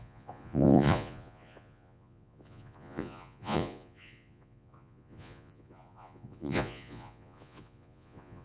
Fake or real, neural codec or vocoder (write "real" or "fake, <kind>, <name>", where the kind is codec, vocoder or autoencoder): fake, vocoder, Vocos